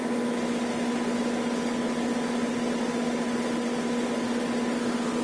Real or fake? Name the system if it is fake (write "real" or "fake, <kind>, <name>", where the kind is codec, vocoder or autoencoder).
real